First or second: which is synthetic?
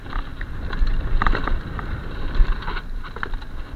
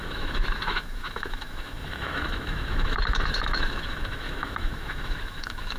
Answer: second